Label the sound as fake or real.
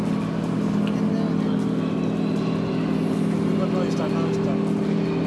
real